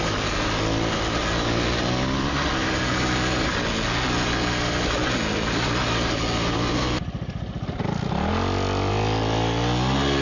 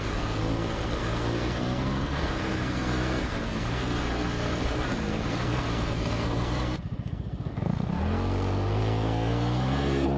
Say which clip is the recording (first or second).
first